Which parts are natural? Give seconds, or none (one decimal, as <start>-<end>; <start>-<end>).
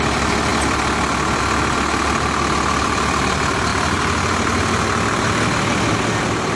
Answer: 0.0-6.6